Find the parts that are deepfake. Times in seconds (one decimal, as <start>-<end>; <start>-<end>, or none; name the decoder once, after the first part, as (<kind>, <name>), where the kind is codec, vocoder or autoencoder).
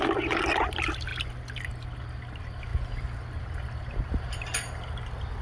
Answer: none